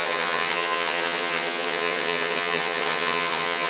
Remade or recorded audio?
remade